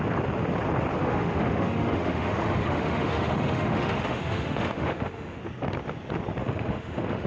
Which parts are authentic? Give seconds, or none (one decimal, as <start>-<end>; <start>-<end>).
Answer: 0.0-1.0; 5.4-6.4